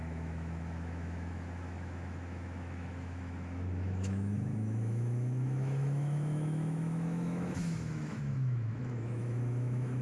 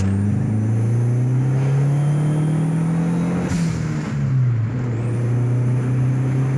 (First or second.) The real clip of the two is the second